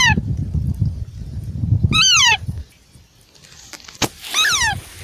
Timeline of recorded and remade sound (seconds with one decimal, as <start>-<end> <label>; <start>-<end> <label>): 0.0-5.0 recorded